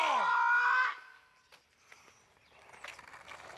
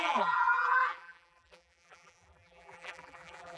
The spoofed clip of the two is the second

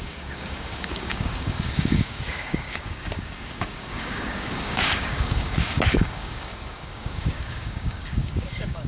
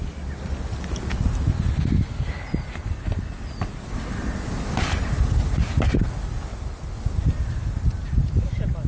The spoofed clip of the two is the first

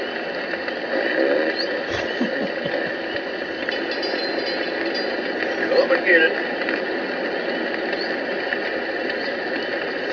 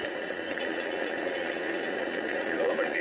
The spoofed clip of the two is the second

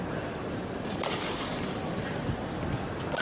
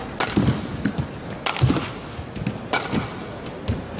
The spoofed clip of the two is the first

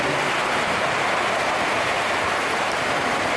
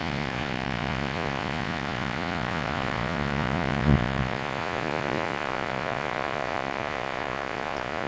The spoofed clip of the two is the second